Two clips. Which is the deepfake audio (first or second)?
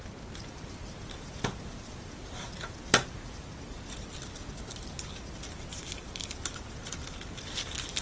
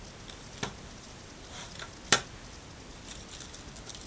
first